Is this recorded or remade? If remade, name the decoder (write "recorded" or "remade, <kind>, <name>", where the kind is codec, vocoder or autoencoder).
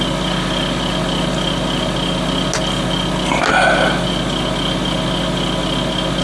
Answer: recorded